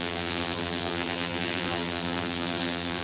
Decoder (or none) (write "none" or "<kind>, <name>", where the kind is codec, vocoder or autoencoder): vocoder, BigVGAN v2